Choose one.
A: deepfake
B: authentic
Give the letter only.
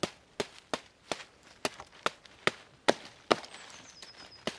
B